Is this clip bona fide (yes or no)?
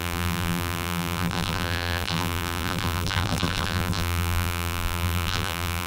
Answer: no